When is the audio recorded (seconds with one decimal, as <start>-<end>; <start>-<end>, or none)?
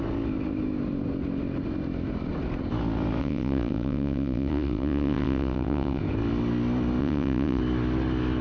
0.0-3.2; 6.0-7.0; 7.6-8.4